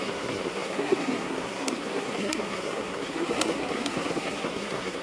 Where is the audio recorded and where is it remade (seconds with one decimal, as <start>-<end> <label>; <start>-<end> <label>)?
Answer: 0.0-5.0 remade